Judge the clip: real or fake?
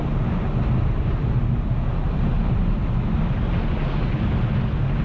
real